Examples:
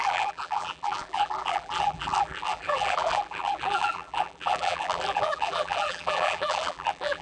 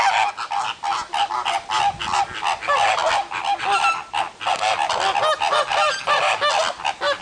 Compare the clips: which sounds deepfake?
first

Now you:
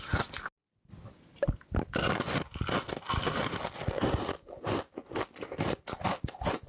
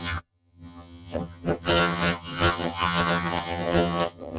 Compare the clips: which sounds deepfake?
second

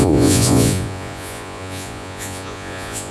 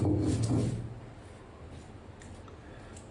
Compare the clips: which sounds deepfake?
first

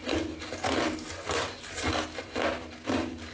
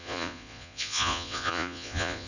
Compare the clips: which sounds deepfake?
second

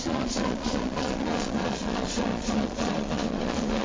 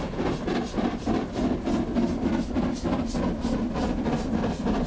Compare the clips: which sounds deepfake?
first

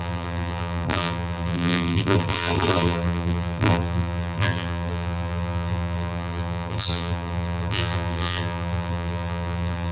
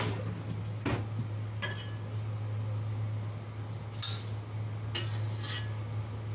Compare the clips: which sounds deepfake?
first